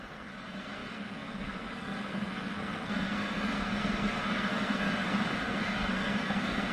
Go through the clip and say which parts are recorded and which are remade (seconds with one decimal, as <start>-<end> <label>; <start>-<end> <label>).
0.0-6.7 remade